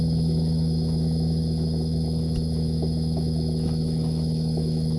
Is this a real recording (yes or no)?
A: no